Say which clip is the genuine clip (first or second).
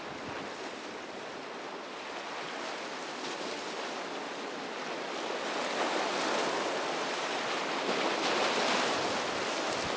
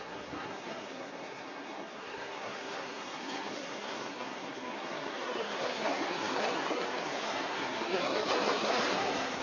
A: first